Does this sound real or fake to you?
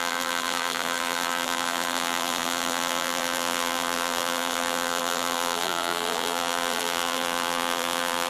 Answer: fake